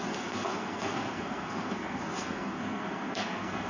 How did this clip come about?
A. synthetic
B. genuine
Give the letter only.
A